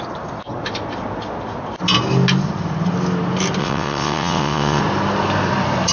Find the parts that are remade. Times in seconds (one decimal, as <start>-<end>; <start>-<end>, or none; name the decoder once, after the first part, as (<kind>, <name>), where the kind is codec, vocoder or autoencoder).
3.6-4.8 (vocoder, WaveNeXt)